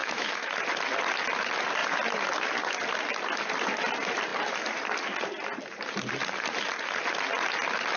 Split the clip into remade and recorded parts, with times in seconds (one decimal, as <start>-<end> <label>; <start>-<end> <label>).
0.0-0.5 remade; 0.5-8.0 recorded